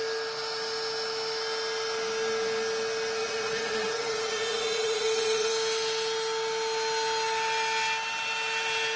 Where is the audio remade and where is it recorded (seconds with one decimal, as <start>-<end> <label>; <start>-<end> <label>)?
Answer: 0.0-3.2 recorded; 3.2-5.5 remade; 5.5-9.0 recorded